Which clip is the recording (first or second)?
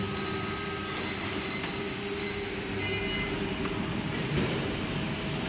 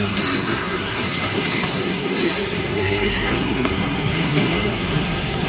first